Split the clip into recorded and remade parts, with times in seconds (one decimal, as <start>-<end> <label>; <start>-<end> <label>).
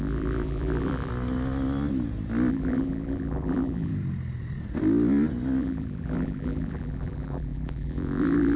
0.0-1.1 remade; 1.1-2.5 recorded; 2.5-3.9 remade; 3.9-5.6 recorded; 5.6-8.6 remade